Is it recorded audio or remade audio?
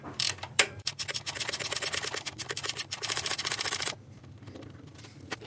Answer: remade